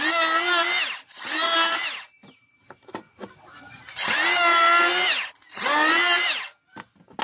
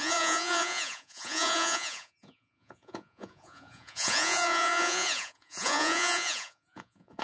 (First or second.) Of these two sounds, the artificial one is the second